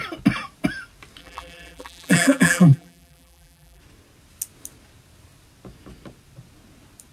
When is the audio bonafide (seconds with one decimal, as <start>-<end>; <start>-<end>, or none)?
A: 0.0-1.2; 3.8-7.1